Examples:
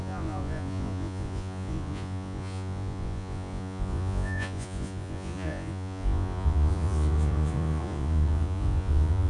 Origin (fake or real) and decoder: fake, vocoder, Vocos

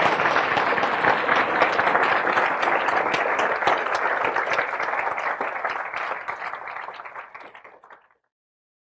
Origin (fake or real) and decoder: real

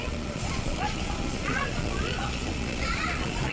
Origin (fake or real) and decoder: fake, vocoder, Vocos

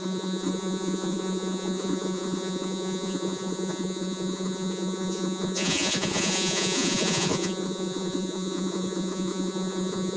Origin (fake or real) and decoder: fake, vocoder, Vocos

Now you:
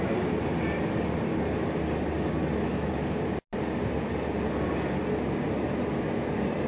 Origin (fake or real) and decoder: real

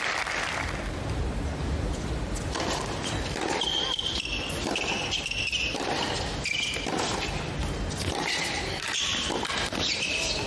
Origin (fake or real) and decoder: real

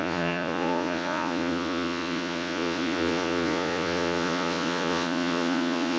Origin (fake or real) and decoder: fake, vocoder, Vocos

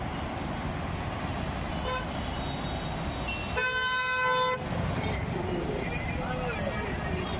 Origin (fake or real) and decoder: real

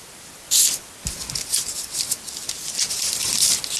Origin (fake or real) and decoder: real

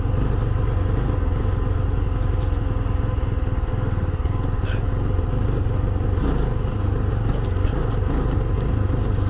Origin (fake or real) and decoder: real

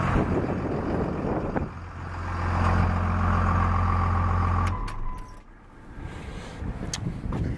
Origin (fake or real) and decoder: real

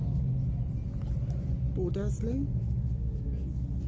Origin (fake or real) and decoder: real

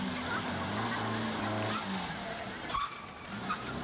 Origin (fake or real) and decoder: real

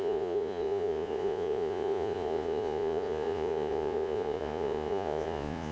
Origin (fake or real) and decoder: fake, vocoder, Vocos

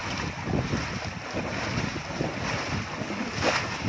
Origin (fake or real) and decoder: real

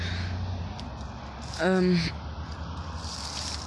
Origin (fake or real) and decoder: real